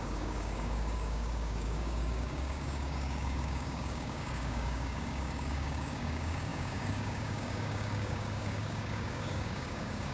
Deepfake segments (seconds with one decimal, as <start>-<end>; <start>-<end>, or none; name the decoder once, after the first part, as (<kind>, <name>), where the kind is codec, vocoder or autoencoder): 0.0-10.1 (codec, DAC)